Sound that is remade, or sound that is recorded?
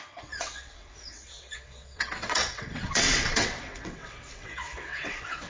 remade